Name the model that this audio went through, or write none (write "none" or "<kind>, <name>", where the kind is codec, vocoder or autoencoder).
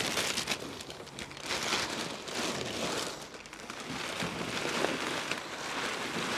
none